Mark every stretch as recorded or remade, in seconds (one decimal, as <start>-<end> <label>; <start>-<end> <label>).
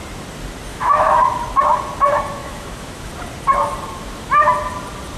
0.0-0.7 recorded; 0.7-1.2 remade; 1.2-2.4 recorded; 2.4-3.1 remade; 3.1-5.2 recorded